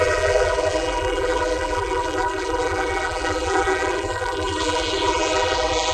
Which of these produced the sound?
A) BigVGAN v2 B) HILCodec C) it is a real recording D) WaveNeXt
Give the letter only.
A